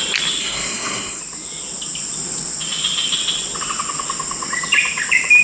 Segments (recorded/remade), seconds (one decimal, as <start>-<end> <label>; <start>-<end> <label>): 0.0-0.4 recorded; 0.4-1.2 remade; 1.2-5.4 recorded